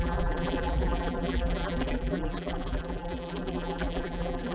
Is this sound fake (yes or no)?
yes